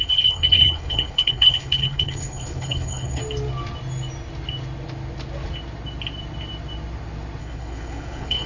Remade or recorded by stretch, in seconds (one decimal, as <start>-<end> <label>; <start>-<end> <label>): 0.0-3.2 remade; 3.2-7.4 recorded; 7.4-8.5 remade